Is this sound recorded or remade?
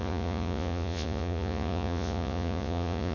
remade